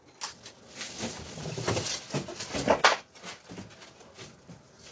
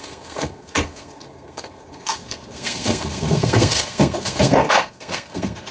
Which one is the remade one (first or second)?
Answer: second